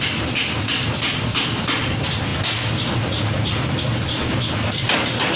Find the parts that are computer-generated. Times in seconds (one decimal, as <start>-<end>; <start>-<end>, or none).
none